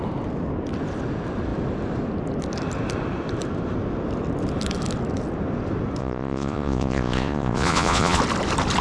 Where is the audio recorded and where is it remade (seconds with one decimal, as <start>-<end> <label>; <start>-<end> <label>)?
0.0-6.0 recorded; 6.0-8.2 remade; 8.2-8.8 recorded